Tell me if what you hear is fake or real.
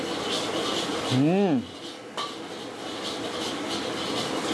real